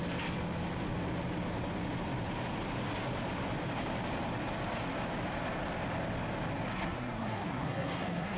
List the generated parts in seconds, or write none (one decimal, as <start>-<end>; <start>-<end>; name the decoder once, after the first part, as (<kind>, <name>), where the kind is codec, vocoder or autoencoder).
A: 6.7-8.4 (codec, SNAC)